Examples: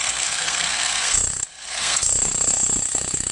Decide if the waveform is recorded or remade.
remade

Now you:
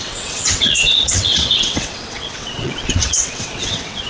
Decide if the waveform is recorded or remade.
remade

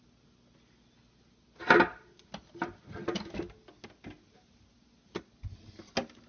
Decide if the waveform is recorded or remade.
recorded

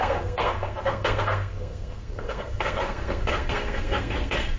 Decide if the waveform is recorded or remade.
remade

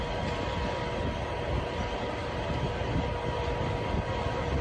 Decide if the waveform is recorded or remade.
recorded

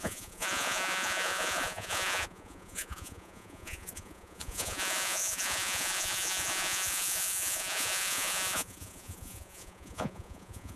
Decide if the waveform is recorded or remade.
remade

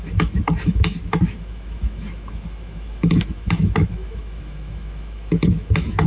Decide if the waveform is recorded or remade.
remade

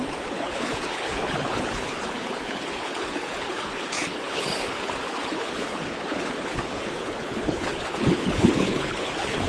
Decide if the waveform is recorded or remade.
remade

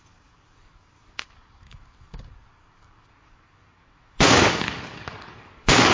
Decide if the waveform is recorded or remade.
remade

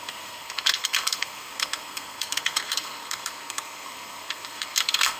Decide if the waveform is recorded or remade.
remade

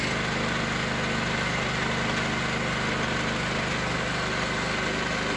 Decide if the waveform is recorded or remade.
recorded